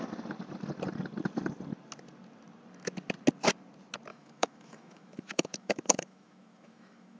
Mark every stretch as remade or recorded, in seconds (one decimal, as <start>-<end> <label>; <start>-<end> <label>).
0.0-4.1 recorded; 4.1-7.2 remade